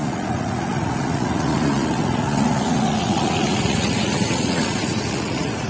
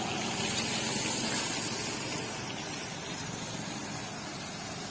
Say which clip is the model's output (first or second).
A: first